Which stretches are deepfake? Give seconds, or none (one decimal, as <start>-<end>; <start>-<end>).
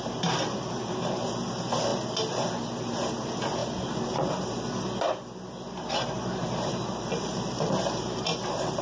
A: none